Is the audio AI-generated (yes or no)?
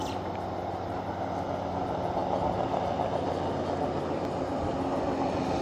no